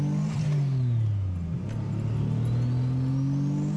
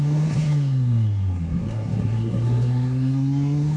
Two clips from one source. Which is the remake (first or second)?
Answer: second